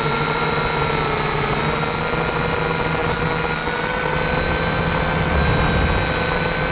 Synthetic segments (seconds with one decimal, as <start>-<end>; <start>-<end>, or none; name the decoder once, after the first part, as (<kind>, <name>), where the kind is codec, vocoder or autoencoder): none